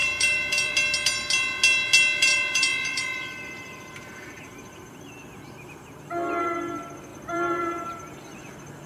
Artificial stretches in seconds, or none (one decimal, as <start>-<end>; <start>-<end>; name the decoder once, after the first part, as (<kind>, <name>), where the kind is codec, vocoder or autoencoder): 0.0-0.7 (vocoder, BigVGAN v2); 2.3-5.1; 7.1-8.2